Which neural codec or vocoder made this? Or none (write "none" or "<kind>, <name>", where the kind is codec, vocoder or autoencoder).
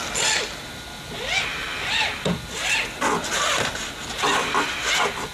none